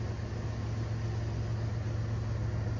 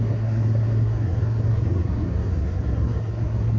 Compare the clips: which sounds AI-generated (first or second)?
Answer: second